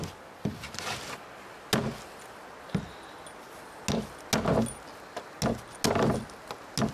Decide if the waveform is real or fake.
real